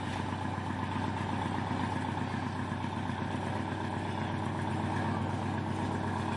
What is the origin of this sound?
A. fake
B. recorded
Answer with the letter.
B